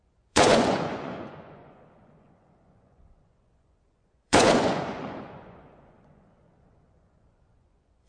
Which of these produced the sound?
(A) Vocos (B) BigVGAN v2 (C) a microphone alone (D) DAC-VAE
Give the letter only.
A